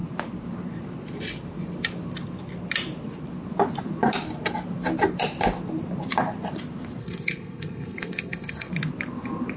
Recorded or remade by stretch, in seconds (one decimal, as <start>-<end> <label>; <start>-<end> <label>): 0.0-7.0 recorded; 7.0-8.7 remade; 8.7-9.6 recorded